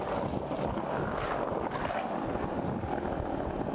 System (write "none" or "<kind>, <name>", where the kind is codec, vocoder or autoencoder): none